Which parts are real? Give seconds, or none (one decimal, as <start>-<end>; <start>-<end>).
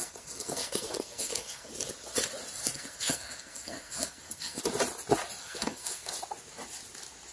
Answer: 1.7-2.6; 4.6-5.4; 6.1-7.3